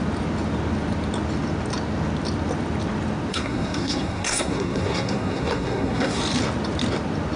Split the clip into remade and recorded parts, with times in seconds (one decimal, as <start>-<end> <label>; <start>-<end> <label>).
0.0-3.3 recorded; 3.3-6.2 remade; 6.2-7.4 recorded